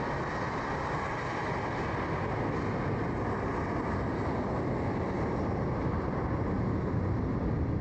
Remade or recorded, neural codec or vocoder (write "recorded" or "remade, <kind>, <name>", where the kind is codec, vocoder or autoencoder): recorded